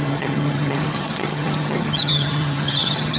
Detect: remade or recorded remade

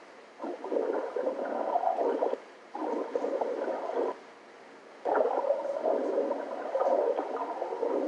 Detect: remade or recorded recorded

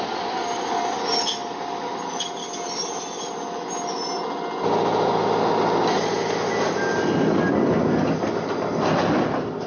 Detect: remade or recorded recorded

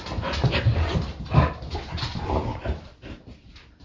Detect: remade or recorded recorded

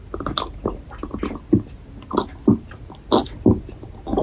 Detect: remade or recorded recorded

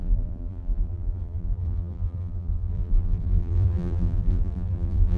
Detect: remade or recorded remade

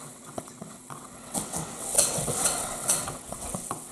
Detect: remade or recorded remade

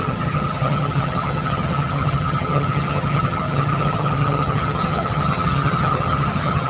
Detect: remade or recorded remade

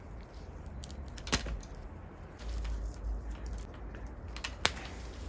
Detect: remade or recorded recorded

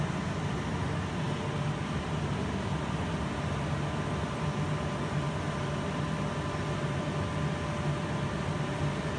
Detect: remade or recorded recorded